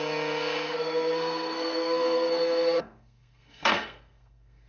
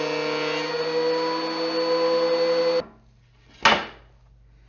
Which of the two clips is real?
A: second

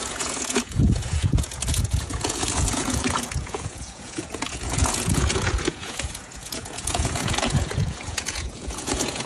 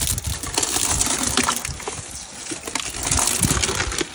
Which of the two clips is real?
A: second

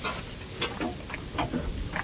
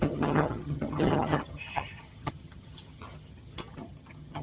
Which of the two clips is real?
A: first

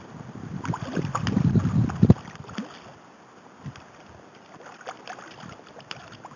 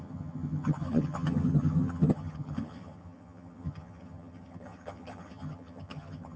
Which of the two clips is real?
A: first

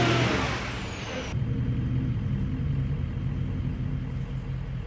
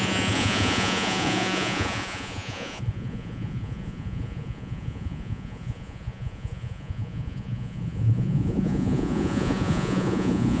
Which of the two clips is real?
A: first